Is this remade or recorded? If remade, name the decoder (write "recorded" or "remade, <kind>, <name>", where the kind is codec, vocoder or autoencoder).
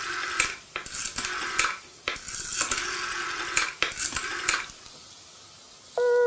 recorded